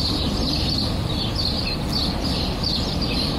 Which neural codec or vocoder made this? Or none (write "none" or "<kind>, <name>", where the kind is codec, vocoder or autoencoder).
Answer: none